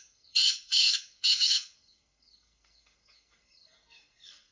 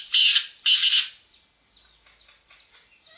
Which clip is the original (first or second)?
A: second